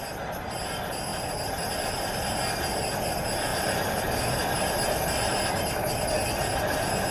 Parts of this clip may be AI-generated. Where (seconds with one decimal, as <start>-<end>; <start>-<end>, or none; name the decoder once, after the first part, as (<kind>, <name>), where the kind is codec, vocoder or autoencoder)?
3.5-4.5 (vocoder, BigVGAN v2)